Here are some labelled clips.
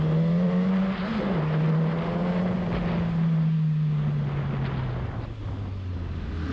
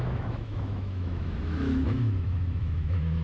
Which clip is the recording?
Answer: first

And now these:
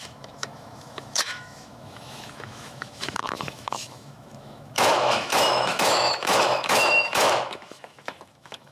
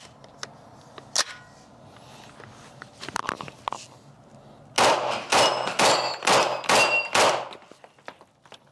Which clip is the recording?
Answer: second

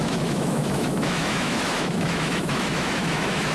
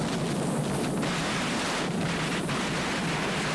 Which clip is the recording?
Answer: second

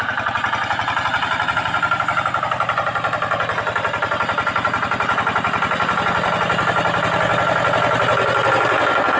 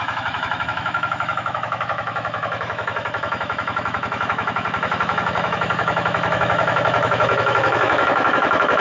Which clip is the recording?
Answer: first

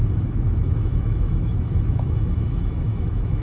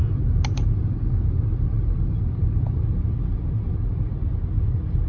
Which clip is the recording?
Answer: second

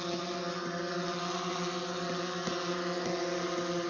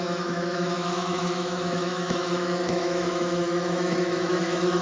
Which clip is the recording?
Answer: first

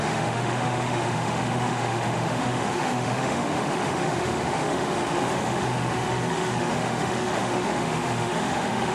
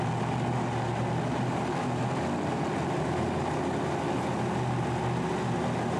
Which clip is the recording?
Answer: second